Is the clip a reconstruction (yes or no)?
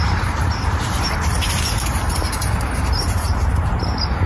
yes